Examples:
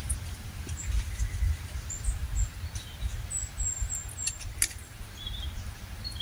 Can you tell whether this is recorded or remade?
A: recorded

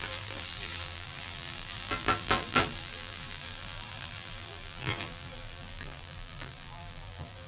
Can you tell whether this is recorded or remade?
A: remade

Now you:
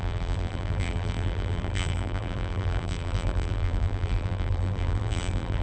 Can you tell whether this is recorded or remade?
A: remade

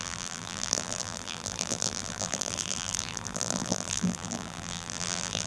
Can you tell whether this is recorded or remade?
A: remade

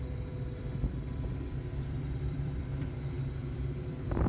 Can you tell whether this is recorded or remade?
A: remade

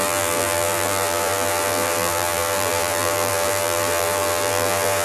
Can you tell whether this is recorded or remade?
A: remade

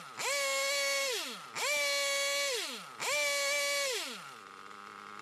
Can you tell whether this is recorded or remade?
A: recorded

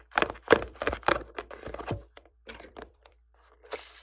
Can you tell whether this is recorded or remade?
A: remade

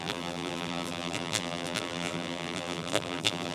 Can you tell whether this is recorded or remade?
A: remade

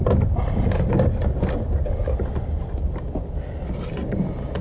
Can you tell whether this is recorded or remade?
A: recorded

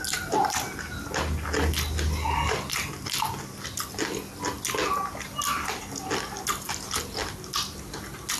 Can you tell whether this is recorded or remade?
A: recorded